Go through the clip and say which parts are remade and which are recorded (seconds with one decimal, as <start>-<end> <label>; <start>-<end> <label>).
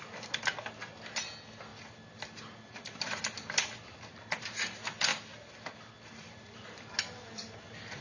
0.0-8.0 recorded